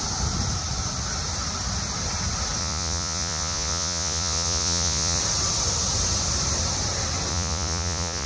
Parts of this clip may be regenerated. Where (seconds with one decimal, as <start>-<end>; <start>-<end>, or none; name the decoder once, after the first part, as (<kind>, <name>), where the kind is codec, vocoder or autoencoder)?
2.6-5.2 (vocoder, Vocos); 7.3-8.3